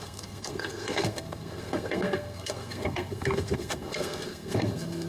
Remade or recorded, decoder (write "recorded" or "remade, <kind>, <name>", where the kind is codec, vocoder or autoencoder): remade, codec, SNAC